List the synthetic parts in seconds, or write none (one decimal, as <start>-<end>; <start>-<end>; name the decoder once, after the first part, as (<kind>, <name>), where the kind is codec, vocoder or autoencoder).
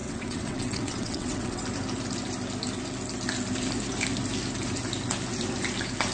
0.0-1.6 (vocoder, WaveNeXt)